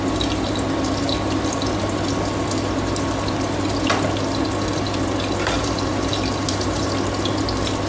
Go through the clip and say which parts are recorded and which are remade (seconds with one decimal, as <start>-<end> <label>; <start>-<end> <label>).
0.0-5.6 recorded; 5.6-6.9 remade; 6.9-7.9 recorded